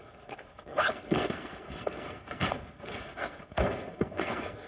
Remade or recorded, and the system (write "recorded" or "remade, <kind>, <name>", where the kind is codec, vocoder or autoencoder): remade, codec, SNAC